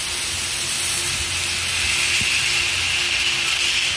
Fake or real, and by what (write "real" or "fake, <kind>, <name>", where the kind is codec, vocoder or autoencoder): real